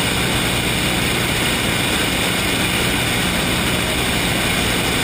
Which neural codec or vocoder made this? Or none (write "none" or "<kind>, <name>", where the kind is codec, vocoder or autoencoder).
none